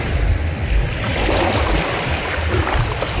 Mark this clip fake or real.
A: real